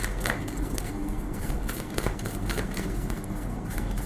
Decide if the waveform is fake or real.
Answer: fake